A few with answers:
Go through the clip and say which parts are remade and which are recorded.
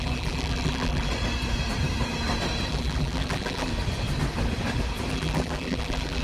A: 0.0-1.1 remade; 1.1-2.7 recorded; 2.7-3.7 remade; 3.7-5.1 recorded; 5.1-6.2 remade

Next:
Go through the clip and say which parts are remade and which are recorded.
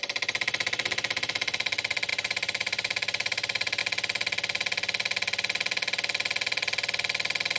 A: 0.0-2.1 recorded; 2.1-3.8 remade; 3.8-7.6 recorded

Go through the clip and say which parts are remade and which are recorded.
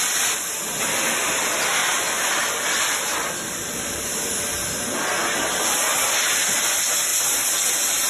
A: 0.0-1.8 recorded; 1.8-4.2 remade; 4.2-8.1 recorded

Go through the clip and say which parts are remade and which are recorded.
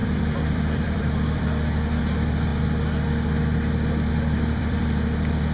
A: 0.0-2.5 remade; 2.5-4.1 recorded; 4.1-5.5 remade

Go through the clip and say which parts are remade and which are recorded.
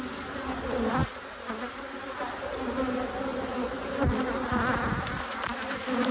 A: 0.0-6.1 recorded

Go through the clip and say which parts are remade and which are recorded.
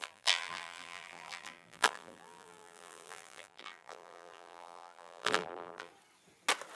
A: 0.0-5.9 remade; 5.9-6.8 recorded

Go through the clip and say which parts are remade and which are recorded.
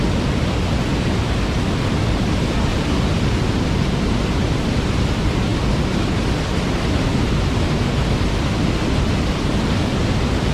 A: 0.0-2.7 recorded; 2.7-3.4 remade; 3.4-10.5 recorded